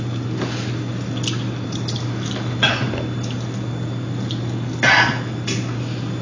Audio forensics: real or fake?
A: real